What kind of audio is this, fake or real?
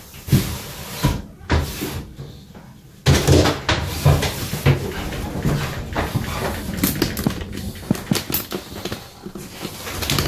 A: real